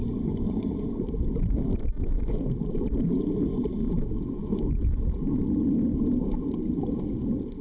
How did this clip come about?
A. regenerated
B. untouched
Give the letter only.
B